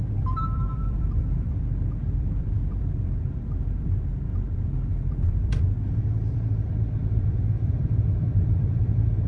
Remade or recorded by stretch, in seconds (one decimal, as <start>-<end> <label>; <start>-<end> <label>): 0.0-9.3 remade